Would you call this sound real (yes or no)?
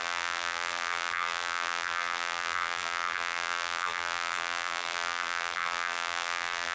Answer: no